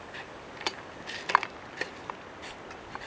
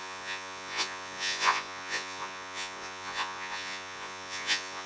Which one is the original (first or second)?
first